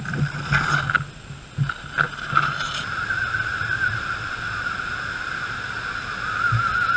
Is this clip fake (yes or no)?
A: no